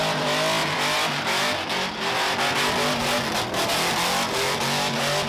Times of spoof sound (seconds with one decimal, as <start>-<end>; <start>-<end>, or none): none